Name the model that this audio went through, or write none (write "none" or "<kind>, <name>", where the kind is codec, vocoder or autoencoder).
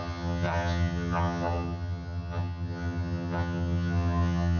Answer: vocoder, HiFi-GAN